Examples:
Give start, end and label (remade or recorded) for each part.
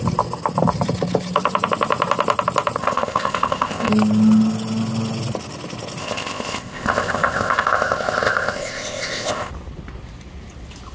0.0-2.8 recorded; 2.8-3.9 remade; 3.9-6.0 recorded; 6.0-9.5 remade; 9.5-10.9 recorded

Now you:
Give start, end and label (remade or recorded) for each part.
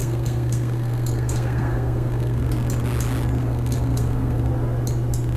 0.0-2.4 remade; 2.4-3.4 recorded; 3.4-4.4 remade; 4.4-5.4 recorded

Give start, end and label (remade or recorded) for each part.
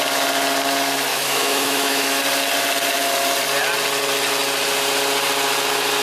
0.0-1.1 recorded; 1.1-2.2 remade; 2.2-6.0 recorded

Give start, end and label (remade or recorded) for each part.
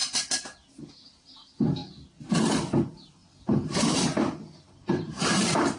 0.0-3.2 recorded; 3.2-5.8 remade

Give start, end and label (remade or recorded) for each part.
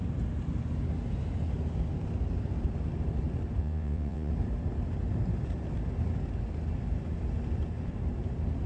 0.0-3.6 recorded; 3.6-4.3 remade; 4.3-8.7 recorded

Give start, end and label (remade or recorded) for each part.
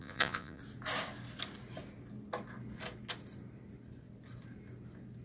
0.0-0.6 remade; 0.6-5.2 recorded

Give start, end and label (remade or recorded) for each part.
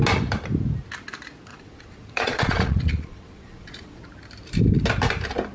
0.0-1.5 recorded; 1.5-4.0 remade; 4.0-5.5 recorded